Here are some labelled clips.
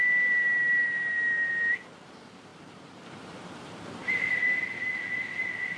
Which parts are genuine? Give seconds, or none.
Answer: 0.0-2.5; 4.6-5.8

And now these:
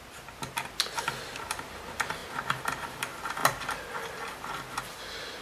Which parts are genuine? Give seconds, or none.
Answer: 0.0-5.4

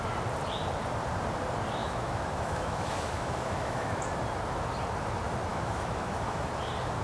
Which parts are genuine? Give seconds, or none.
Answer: 0.0-1.8; 4.0-5.5; 6.5-7.0

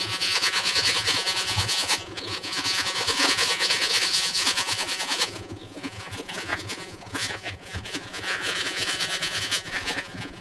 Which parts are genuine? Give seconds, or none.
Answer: none

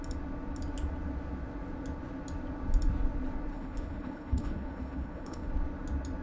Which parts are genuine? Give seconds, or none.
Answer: 0.0-3.5; 5.5-6.2

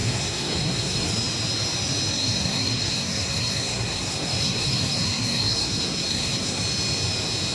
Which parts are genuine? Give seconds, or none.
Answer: 1.1-2.1; 6.6-7.5

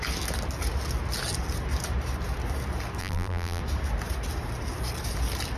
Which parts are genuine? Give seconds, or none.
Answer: 0.0-3.0; 3.6-5.6

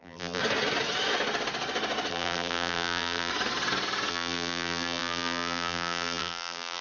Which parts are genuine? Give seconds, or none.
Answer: 0.4-2.1; 3.3-4.1